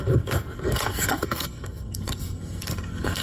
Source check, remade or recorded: remade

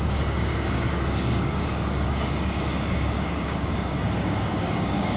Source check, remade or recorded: remade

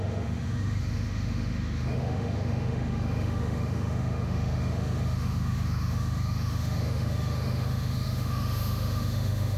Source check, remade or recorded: remade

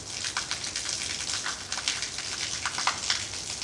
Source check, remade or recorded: recorded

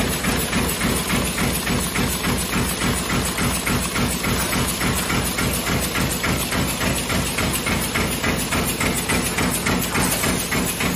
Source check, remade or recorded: recorded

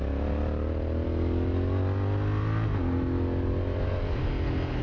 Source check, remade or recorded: recorded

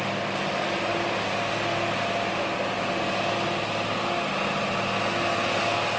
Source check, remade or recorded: recorded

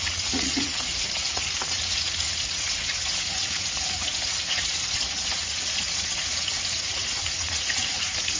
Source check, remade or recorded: remade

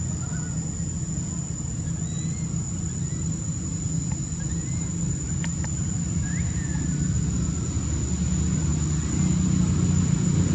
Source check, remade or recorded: recorded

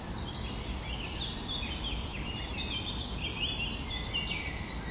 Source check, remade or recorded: recorded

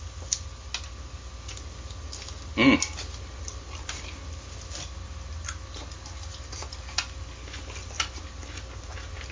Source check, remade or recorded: recorded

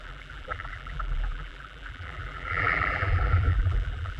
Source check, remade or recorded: remade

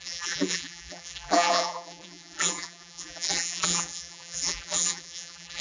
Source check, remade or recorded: remade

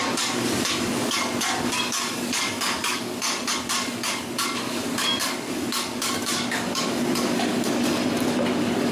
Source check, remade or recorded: remade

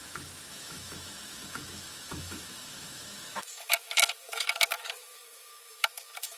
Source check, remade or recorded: remade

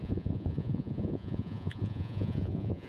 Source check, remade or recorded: remade